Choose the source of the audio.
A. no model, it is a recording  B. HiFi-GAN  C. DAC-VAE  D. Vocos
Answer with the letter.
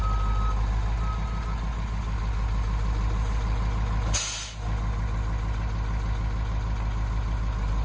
A